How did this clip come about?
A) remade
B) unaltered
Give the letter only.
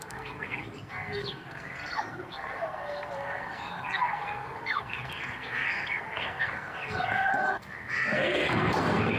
A